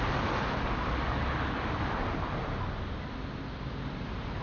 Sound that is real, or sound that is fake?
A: real